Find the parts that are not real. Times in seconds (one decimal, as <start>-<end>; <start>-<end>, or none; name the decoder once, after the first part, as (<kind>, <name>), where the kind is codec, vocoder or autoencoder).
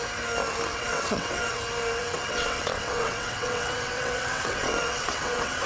0.7-1.6 (vocoder, WaveNeXt); 2.0-5.7